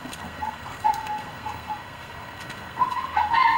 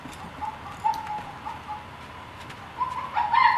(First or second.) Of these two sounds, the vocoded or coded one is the first